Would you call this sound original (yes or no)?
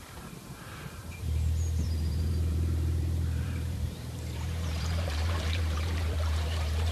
no